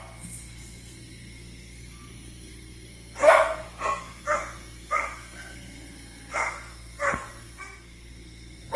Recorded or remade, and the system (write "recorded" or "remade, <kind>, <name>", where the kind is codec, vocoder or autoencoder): remade, codec, SNAC